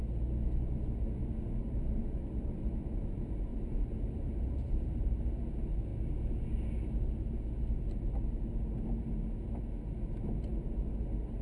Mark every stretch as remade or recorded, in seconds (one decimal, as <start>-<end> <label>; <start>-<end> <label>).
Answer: 0.0-1.2 recorded; 1.2-2.0 remade; 2.0-3.5 recorded; 3.5-5.4 remade; 5.4-11.4 recorded